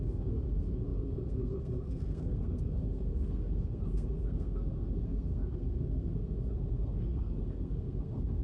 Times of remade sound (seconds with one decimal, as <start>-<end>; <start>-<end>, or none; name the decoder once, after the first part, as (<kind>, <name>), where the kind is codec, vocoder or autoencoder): 0.0-8.4 (codec, SNAC)